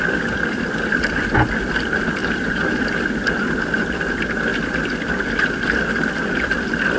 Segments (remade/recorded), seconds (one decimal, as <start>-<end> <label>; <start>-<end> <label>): 0.0-2.2 recorded; 2.2-2.8 remade; 2.8-7.0 recorded